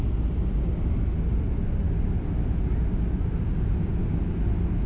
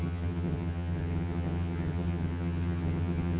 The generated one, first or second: second